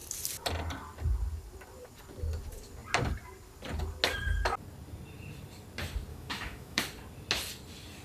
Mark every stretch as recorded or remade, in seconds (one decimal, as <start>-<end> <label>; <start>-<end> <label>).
0.0-6.1 recorded; 6.1-6.8 remade; 6.8-8.0 recorded